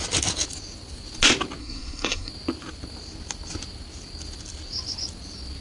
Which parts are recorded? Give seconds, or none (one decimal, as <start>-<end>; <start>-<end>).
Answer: 0.0-1.6; 2.3-5.6